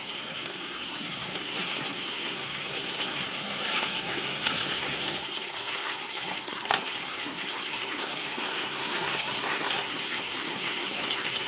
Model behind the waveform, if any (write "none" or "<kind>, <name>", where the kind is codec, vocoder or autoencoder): codec, SNAC